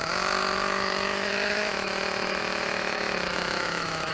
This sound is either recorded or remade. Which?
remade